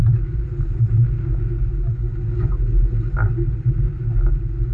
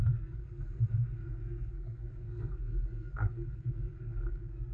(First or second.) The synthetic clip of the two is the second